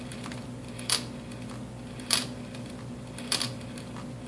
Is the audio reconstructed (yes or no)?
yes